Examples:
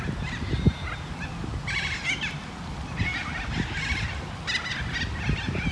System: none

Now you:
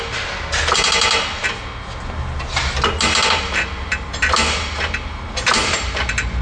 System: none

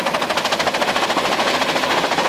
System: none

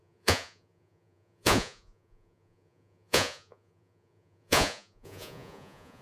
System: vocoder, Vocos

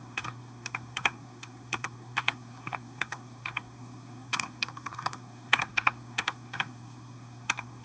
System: codec, SNAC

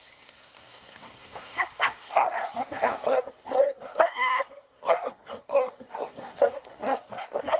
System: codec, SNAC